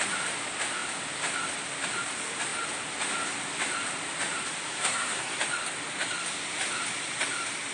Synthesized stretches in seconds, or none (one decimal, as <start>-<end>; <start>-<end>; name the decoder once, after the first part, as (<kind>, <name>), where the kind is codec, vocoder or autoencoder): 4.7-5.4 (codec, SNAC)